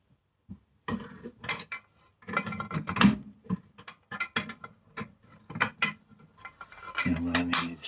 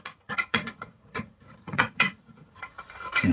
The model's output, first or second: second